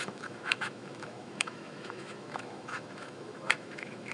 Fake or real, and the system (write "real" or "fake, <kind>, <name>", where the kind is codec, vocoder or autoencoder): fake, autoencoder, DAC-VAE